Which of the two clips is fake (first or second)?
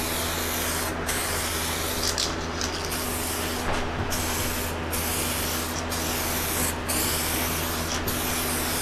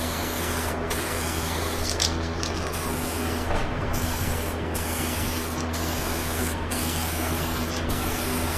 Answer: second